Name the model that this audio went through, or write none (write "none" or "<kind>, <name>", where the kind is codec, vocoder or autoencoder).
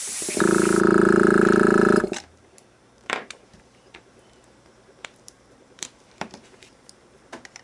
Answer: vocoder, BigVGAN v2